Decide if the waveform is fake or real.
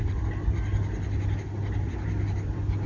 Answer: real